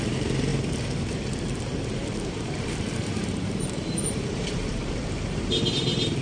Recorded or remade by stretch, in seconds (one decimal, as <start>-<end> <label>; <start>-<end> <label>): 0.0-6.2 remade